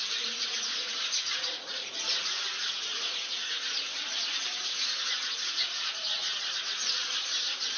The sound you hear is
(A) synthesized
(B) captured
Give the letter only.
A